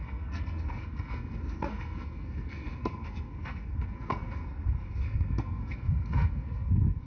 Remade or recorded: remade